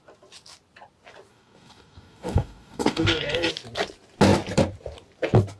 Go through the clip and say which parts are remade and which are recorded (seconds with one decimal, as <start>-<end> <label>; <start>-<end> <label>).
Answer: 0.0-1.3 recorded; 1.3-3.5 remade; 3.5-5.6 recorded